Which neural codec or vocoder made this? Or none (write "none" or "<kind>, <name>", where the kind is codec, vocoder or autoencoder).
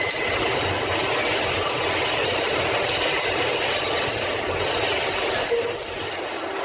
none